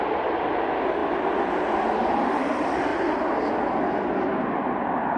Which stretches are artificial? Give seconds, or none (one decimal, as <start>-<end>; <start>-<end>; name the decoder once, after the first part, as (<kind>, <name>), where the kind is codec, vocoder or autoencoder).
none